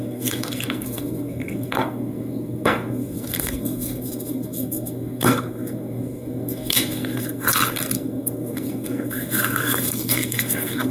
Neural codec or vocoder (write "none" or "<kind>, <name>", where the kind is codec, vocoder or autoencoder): codec, SNAC